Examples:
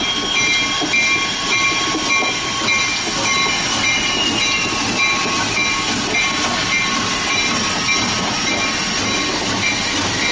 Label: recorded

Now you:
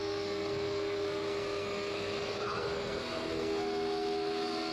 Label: remade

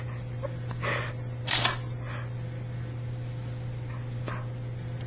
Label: recorded